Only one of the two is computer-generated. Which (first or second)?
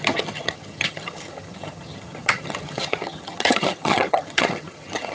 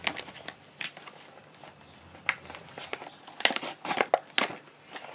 first